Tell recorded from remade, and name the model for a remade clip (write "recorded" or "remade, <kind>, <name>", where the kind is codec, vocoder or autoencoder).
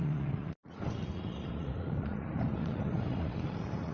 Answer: remade, vocoder, Vocos